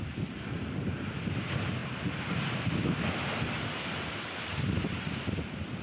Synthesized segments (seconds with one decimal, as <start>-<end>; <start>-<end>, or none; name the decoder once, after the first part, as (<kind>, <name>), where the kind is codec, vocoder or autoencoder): none